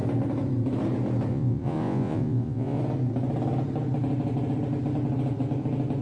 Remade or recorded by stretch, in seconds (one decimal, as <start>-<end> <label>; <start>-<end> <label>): 0.0-1.3 recorded; 1.3-2.8 remade; 2.8-6.0 recorded